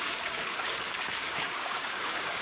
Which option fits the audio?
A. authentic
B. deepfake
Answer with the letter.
B